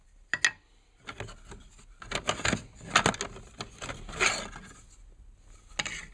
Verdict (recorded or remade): recorded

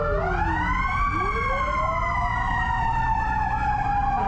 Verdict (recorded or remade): recorded